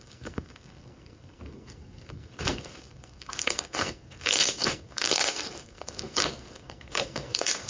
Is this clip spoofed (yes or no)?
yes